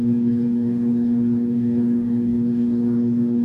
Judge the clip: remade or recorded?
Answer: remade